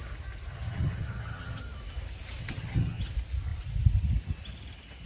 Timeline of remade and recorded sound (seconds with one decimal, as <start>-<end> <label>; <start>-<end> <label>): 0.0-0.5 recorded; 0.5-1.6 remade; 1.6-2.4 recorded; 2.4-3.0 remade; 3.0-5.1 recorded